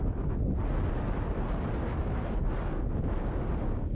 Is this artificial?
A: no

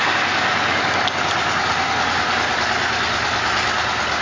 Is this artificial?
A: no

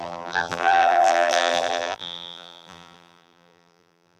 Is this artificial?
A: yes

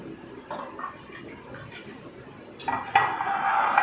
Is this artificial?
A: no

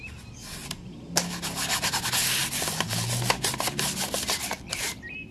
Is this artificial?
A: no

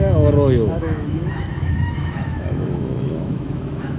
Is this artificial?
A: yes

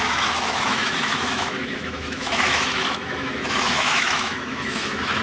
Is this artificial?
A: yes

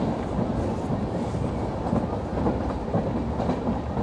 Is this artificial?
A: no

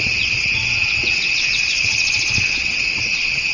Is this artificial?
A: yes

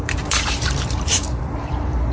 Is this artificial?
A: yes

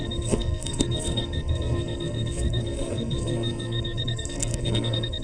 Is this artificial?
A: yes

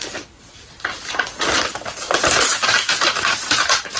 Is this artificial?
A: no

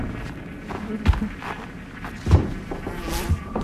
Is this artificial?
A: no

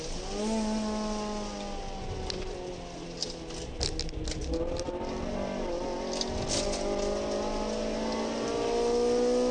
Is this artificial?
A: no